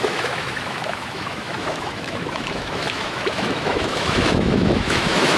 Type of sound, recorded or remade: remade